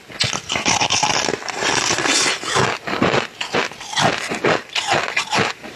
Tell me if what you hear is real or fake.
real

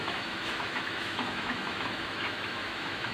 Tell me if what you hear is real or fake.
fake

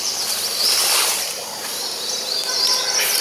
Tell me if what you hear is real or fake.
fake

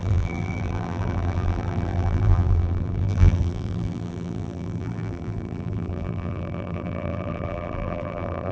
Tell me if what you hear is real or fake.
fake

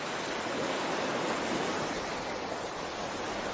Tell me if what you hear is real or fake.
real